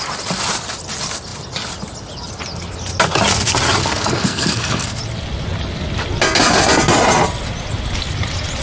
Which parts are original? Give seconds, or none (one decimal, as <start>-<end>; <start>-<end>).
0.0-3.8; 5.0-8.6